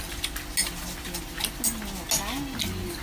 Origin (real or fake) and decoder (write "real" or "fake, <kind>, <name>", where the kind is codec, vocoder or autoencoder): real